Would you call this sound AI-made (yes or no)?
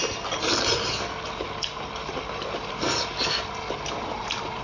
no